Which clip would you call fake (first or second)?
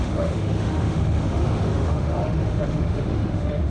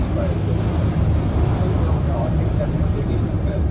first